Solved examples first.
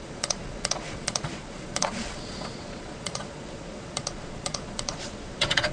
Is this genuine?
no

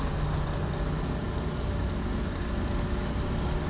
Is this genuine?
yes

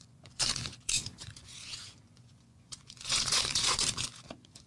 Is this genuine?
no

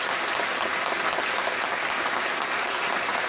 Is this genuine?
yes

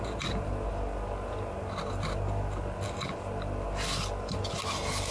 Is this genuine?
yes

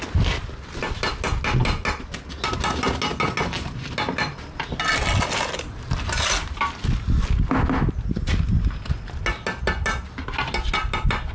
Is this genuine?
yes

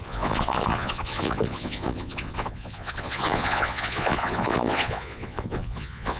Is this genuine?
no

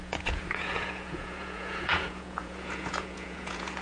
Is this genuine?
no